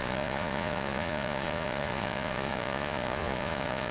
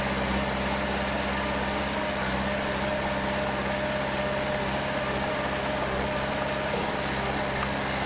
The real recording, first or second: second